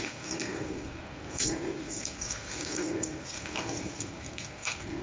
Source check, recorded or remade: remade